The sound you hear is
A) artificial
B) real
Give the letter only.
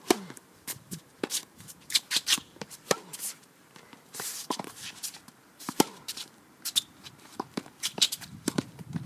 A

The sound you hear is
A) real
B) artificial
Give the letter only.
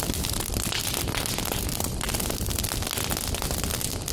A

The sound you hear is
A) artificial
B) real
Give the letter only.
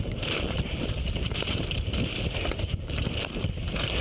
A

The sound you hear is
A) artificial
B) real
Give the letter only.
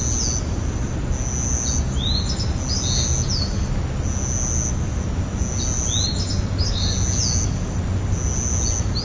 B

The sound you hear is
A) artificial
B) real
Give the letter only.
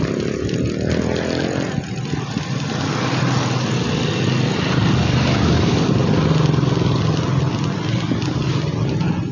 B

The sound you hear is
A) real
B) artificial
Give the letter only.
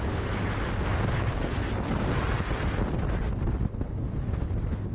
A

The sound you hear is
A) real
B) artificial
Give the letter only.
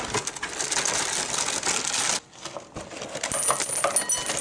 A